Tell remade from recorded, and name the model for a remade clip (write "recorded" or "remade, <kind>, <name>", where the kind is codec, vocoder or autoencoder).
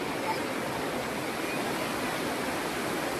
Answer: recorded